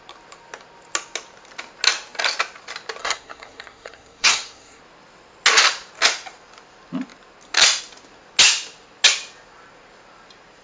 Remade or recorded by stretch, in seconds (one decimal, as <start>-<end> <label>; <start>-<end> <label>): 0.0-3.0 recorded; 3.0-4.8 remade; 4.8-10.6 recorded